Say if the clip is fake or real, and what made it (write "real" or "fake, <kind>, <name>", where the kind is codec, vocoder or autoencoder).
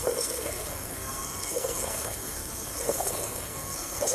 fake, codec, SNAC